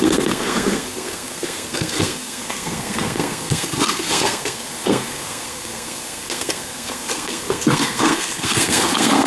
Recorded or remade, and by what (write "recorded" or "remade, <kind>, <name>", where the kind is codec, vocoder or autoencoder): remade, codec, SNAC